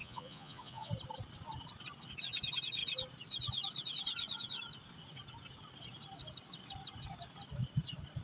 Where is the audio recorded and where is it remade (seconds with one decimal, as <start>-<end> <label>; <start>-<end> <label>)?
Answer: 0.0-0.9 remade; 0.9-8.2 recorded